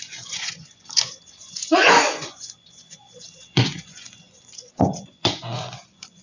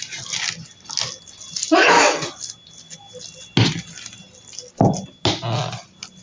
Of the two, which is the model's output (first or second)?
first